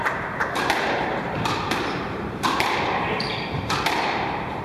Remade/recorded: remade